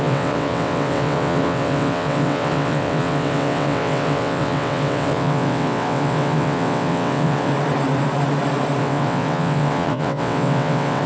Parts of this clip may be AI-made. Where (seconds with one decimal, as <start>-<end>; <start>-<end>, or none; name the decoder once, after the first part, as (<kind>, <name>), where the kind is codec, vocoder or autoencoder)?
0.0-7.5 (vocoder, WaveNeXt); 8.8-11.1